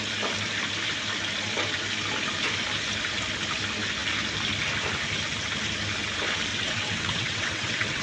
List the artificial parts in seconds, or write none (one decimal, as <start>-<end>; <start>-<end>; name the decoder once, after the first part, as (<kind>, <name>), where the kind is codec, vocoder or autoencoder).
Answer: 6.5-8.0 (vocoder, WaveNeXt)